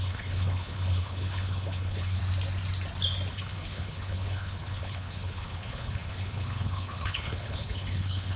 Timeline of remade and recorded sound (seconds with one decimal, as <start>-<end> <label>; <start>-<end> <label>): 0.0-2.2 remade; 2.2-3.3 recorded; 3.3-8.4 remade